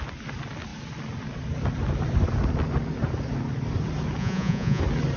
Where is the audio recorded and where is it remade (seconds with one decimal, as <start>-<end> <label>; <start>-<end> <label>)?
0.0-4.2 recorded; 4.2-4.8 remade; 4.8-5.2 recorded